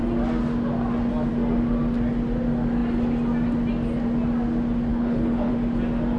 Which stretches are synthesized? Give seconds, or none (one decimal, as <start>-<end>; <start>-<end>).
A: 4.9-5.5